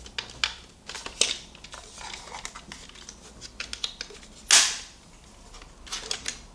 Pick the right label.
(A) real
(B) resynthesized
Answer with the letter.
A